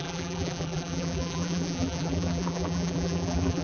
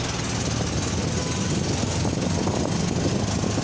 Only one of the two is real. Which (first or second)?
second